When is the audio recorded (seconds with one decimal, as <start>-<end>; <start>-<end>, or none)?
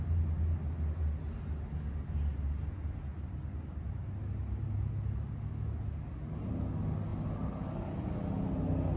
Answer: 0.0-9.0